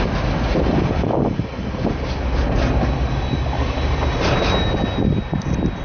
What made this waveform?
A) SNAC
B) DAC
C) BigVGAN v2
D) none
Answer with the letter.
D